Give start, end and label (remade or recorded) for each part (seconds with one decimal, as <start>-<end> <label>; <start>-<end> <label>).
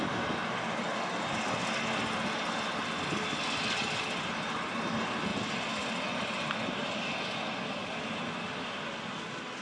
0.0-9.6 recorded